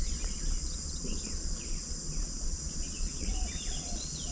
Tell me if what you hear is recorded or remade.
remade